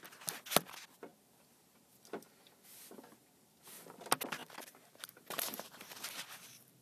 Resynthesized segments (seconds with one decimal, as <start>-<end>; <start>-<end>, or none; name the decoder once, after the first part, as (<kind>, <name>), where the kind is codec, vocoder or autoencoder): 4.4-6.0 (vocoder, BigVGAN v2)